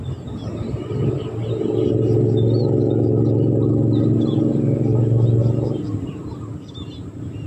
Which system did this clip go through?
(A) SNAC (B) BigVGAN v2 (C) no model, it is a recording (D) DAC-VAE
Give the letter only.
C